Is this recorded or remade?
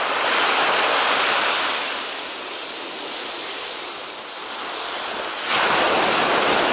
recorded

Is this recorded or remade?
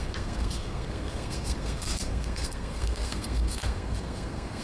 remade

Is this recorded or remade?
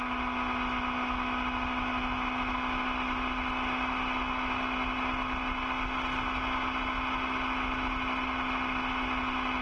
recorded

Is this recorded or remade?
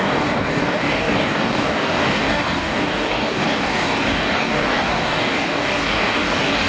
remade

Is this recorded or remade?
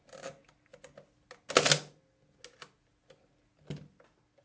recorded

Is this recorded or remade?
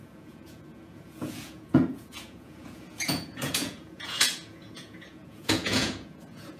remade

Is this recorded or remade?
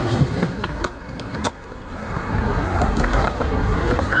remade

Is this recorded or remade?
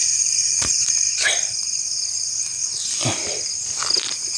recorded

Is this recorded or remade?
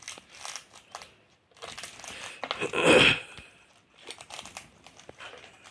recorded